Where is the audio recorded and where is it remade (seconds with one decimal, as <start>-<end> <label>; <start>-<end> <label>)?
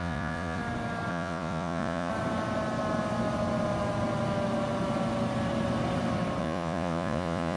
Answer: 0.0-0.6 remade; 0.6-1.1 recorded; 1.1-2.1 remade; 2.1-6.4 recorded; 6.4-7.6 remade